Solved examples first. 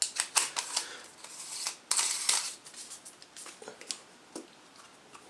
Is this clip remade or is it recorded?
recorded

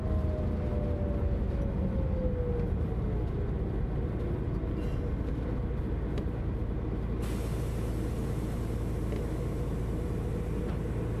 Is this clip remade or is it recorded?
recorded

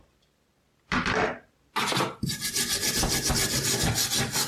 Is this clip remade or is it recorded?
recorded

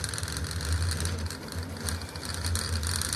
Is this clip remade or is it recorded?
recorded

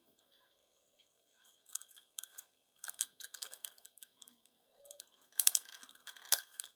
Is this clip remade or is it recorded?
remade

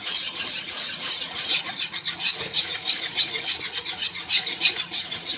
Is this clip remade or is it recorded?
remade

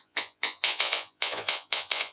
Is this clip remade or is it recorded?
remade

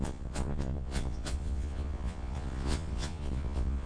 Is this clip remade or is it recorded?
remade